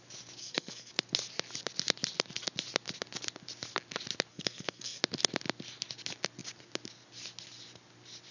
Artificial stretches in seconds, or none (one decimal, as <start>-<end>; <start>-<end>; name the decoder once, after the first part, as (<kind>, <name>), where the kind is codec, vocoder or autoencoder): 0.4-0.9 (codec, SNAC); 4.3-5.0